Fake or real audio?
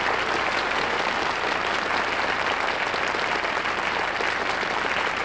real